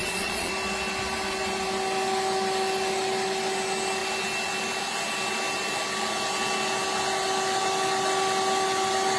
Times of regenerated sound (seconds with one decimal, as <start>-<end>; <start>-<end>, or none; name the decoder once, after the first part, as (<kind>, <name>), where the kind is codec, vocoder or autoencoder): 0.0-0.5 (vocoder, Vocos)